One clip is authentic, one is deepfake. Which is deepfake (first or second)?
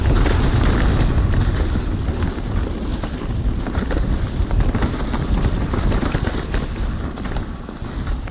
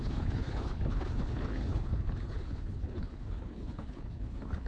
second